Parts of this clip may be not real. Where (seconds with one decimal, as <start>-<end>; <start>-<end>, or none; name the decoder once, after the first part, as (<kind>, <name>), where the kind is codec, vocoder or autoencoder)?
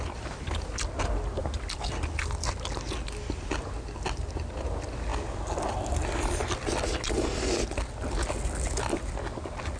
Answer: none